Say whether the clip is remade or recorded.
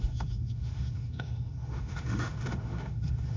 remade